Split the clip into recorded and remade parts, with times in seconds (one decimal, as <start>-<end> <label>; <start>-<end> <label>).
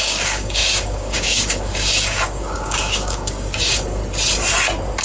0.0-4.0 remade; 4.0-5.0 recorded